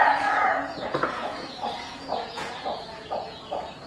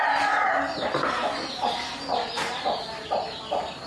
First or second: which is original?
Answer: second